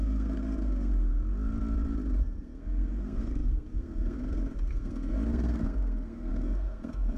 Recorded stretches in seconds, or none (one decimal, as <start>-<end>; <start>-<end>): 1.1-2.2